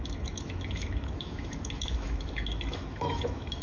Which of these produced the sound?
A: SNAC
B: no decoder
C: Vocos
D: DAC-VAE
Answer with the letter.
D